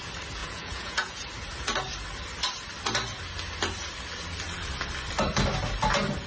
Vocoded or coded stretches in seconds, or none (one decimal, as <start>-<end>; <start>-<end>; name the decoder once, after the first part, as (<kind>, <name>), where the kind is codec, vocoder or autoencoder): 0.4-1.2 (vocoder, Vocos)